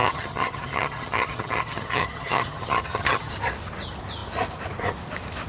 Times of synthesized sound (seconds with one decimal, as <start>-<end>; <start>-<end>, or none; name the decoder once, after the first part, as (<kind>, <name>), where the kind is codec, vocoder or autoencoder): 0.0-3.3 (vocoder, HiFi-GAN)